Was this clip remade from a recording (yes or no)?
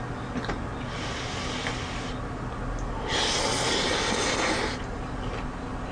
no